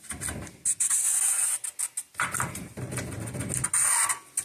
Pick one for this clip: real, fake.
real